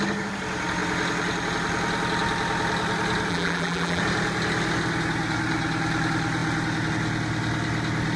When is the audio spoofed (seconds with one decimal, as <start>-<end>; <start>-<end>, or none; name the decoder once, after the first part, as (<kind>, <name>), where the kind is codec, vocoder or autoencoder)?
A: 3.3-4.0 (vocoder, BigVGAN v2)